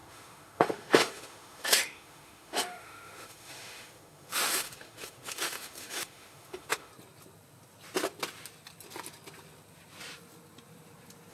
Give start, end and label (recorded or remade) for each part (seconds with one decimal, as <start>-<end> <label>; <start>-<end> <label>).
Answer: 0.0-6.9 remade; 6.9-11.3 recorded